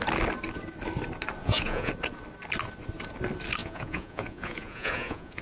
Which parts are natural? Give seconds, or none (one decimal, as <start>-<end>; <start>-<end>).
0.0-1.4; 1.9-3.6